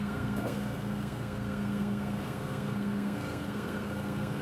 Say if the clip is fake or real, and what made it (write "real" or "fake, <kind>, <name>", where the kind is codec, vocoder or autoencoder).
fake, codec, SNAC